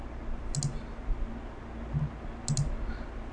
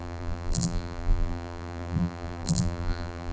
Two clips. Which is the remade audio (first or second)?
second